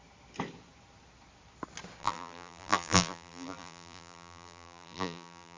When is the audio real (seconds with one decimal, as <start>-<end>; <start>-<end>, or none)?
0.0-2.0